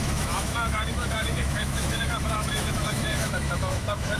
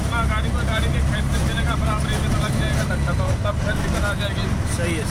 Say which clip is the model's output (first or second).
first